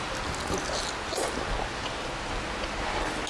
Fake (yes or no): no